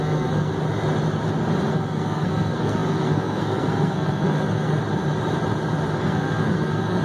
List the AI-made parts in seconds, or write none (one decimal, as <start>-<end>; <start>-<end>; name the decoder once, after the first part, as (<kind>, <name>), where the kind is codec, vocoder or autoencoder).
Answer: 0.0-0.5 (codec, SNAC); 1.7-4.8; 6.0-7.0